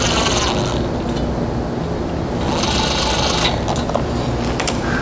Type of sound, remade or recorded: recorded